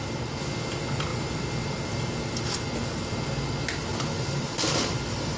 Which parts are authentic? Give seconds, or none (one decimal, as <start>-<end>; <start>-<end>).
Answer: 0.7-3.9